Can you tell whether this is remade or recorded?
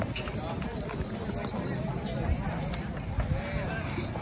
recorded